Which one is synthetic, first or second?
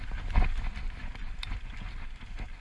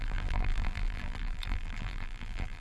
second